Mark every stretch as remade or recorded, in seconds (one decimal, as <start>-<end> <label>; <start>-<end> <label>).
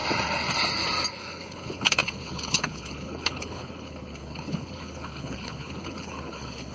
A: 0.0-1.1 recorded; 1.1-6.7 remade